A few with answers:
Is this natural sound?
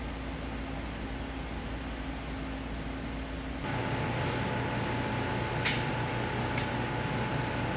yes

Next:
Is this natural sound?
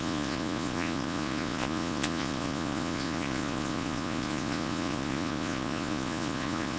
no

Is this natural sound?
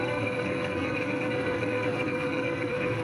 no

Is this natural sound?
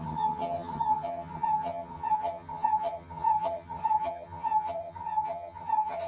no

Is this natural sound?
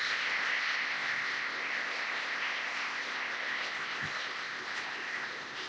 no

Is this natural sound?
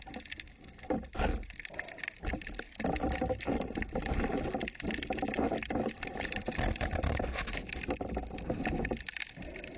yes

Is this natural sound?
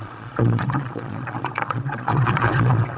no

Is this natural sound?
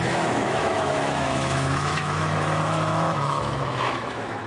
no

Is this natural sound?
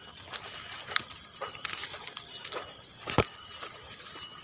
yes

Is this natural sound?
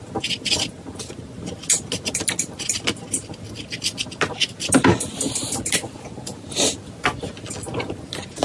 yes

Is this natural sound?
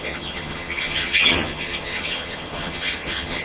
no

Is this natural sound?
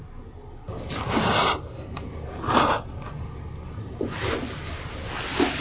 yes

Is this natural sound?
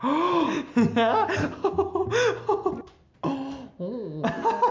yes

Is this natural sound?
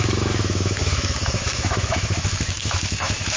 no